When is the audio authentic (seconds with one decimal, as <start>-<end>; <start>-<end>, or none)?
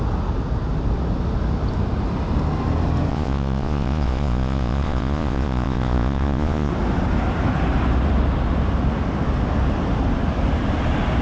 0.0-3.1; 6.7-11.2